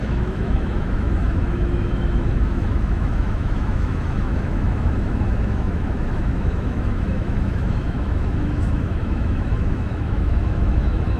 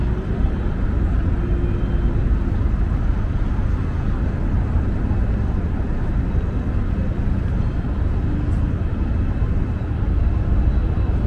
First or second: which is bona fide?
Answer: second